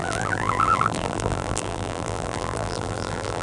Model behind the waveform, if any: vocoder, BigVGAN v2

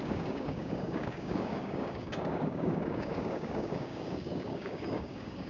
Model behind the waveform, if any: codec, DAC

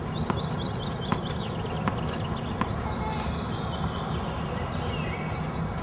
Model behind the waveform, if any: none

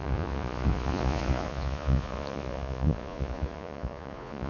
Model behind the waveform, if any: vocoder, Vocos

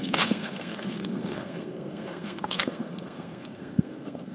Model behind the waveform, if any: codec, SNAC